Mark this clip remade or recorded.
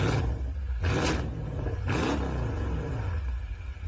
recorded